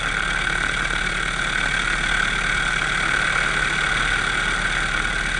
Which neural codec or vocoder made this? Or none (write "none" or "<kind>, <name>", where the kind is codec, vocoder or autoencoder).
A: none